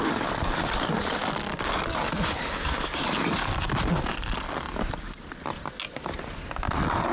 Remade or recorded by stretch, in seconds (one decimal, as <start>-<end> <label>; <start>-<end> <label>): 0.0-7.1 recorded